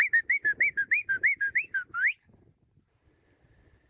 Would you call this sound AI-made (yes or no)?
no